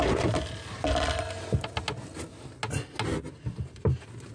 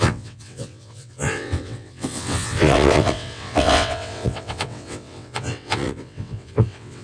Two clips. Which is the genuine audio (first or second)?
first